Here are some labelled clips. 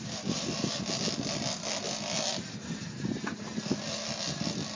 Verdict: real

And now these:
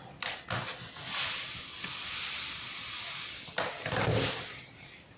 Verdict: real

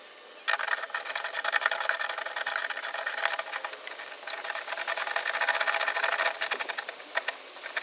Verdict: real